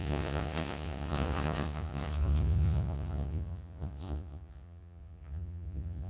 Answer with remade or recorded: remade